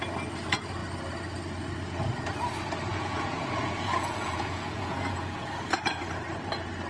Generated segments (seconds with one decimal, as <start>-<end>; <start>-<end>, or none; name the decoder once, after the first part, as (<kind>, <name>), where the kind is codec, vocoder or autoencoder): 2.9-5.5 (vocoder, Vocos)